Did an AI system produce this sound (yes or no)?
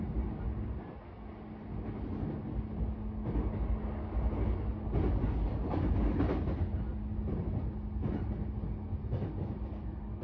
no